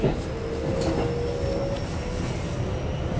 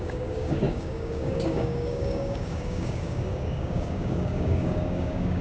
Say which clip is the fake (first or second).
second